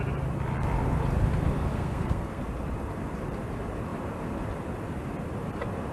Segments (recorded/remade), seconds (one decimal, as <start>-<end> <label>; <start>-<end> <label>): 0.0-1.7 recorded; 1.7-2.4 remade; 2.4-5.9 recorded